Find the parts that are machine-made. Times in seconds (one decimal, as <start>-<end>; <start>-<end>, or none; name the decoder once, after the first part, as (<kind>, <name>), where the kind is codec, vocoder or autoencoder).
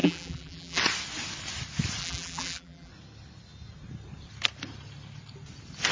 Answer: 0.0-0.8 (vocoder, BigVGAN v2); 2.0-2.9